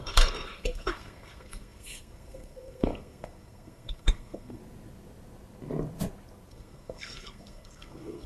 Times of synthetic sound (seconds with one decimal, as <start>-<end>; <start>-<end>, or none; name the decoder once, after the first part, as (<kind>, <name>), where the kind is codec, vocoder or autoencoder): 0.0-4.6 (codec, SNAC); 6.5-8.3